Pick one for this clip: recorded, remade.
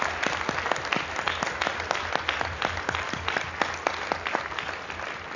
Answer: recorded